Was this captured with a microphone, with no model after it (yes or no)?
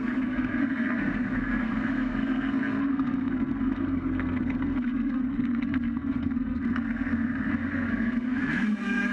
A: no